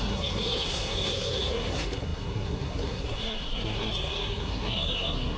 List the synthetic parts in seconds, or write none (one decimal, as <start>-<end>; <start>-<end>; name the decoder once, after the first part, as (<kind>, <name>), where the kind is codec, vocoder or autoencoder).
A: 0.0-5.4 (codec, SNAC)